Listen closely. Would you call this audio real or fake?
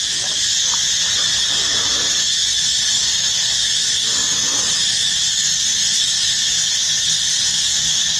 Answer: real